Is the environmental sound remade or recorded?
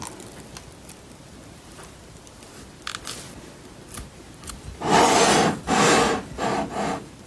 recorded